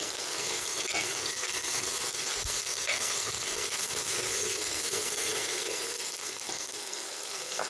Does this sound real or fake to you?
fake